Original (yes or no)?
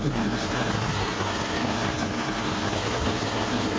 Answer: no